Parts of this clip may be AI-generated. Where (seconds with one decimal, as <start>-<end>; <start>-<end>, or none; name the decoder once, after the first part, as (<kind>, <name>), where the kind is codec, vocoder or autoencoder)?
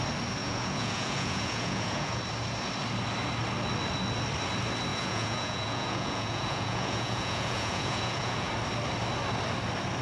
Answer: 0.4-2.2 (vocoder, Vocos); 4.9-8.5